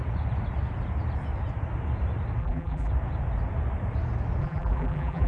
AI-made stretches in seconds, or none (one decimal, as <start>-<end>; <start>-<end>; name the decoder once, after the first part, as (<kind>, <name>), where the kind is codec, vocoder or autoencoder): 2.4-2.9 (vocoder, BigVGAN v2); 4.4-5.3